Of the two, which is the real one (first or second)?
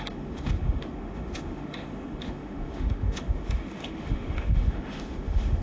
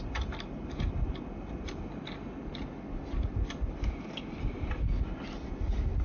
second